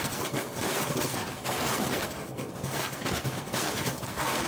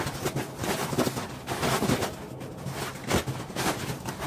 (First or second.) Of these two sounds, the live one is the second